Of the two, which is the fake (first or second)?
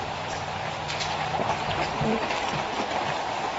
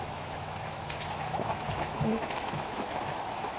second